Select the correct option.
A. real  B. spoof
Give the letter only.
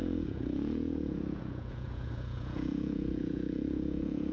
B